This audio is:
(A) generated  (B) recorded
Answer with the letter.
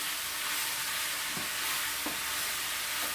B